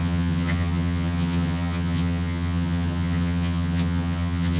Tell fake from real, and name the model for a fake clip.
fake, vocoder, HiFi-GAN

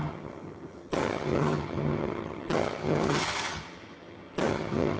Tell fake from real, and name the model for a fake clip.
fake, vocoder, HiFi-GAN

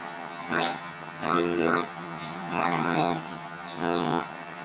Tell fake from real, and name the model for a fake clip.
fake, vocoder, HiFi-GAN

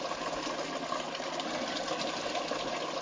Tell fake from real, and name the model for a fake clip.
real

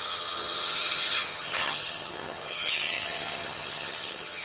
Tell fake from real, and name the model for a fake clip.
fake, vocoder, HiFi-GAN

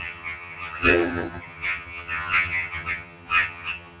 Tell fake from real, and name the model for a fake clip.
fake, vocoder, HiFi-GAN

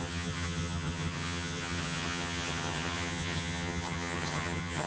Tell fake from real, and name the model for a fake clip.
fake, vocoder, HiFi-GAN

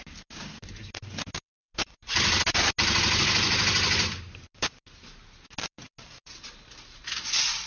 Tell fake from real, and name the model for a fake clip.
real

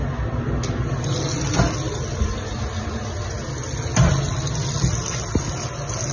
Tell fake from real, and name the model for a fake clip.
real